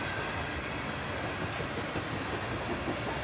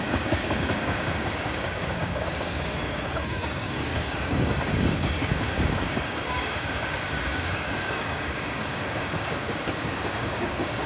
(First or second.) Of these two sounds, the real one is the first